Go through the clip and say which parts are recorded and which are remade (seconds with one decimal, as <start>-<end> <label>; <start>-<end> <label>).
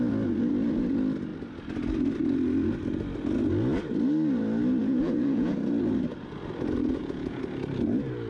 0.0-4.8 recorded; 4.8-5.6 remade; 5.6-6.8 recorded; 6.8-7.4 remade; 7.4-8.3 recorded